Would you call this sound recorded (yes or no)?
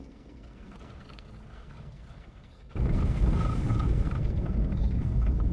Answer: no